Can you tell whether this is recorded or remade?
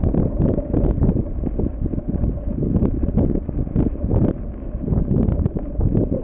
recorded